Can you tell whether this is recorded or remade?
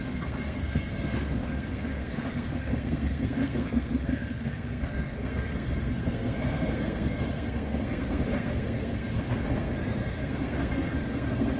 remade